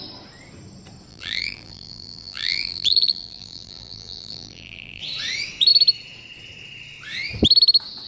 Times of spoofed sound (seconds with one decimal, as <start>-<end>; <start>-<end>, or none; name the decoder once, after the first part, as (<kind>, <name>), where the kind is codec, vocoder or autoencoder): 1.1-5.0 (vocoder, BigVGAN v2)